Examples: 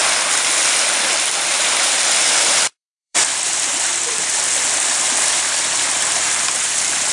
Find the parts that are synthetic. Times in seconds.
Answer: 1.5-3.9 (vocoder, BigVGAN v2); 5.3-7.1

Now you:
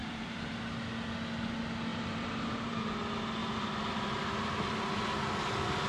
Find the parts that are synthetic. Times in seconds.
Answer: 0.0-0.5 (vocoder, BigVGAN v2); 1.9-2.8; 3.4-4.9